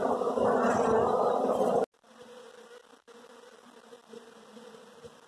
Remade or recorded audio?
recorded